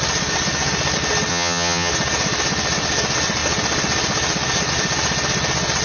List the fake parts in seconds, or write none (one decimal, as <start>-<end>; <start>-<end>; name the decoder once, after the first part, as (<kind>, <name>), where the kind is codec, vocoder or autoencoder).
1.3-1.9 (vocoder, HiFi-GAN)